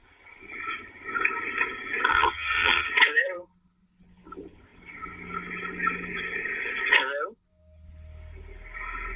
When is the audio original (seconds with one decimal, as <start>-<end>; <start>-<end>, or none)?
0.0-2.1; 2.9-9.2